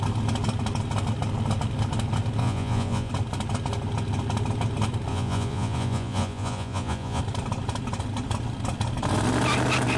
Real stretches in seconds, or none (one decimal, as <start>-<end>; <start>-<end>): 0.0-2.4; 3.1-5.1; 7.2-10.0